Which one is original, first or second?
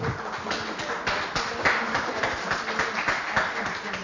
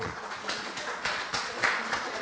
first